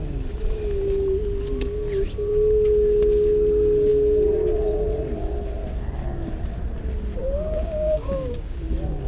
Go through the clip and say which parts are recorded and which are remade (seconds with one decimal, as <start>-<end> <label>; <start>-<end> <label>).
0.0-7.2 recorded; 7.2-8.6 remade; 8.6-9.1 recorded